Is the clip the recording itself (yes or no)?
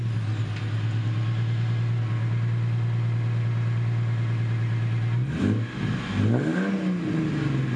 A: yes